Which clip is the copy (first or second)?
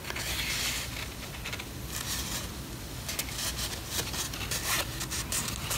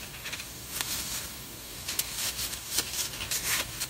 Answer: second